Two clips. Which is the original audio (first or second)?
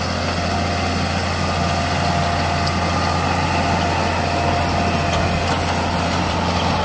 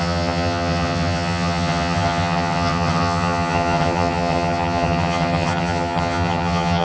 first